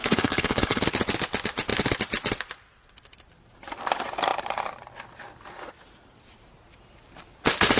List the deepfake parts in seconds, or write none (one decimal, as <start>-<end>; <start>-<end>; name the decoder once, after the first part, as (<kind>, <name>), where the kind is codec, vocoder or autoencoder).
0.0-0.8 (codec, HILCodec)